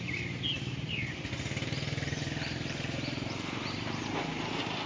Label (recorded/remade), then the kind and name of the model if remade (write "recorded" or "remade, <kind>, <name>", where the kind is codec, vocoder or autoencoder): remade, vocoder, BigVGAN v2